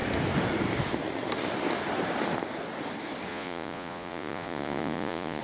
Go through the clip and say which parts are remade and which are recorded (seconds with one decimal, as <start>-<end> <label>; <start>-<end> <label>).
0.0-3.3 recorded; 3.3-5.4 remade